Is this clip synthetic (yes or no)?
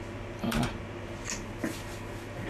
no